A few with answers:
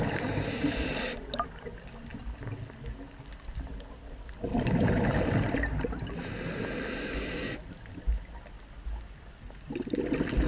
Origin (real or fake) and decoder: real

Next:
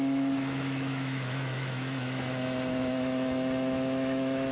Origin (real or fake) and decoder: fake, autoencoder, DAC-VAE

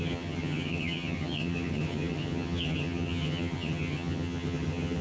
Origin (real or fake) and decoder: fake, vocoder, HiFi-GAN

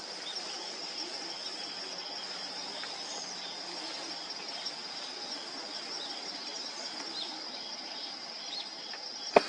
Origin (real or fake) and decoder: real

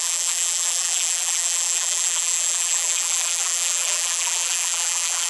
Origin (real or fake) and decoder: fake, vocoder, BigVGAN v2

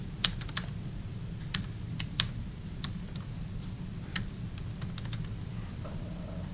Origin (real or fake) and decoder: real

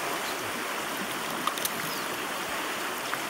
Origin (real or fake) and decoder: real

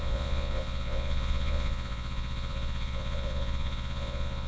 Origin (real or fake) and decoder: fake, vocoder, Vocos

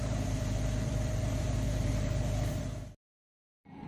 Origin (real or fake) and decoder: fake, vocoder, BigVGAN v2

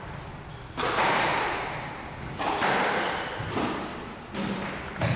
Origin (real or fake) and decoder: fake, vocoder, BigVGAN v2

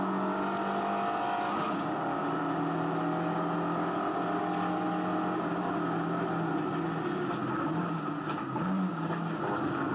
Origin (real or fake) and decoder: real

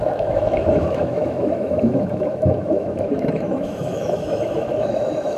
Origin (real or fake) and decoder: fake, autoencoder, DAC-VAE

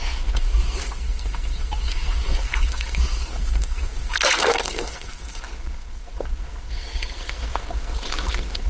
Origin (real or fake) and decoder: fake, codec, SNAC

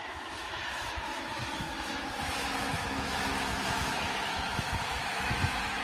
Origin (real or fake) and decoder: fake, autoencoder, DAC-VAE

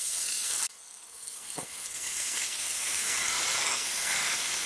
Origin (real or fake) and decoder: fake, codec, SNAC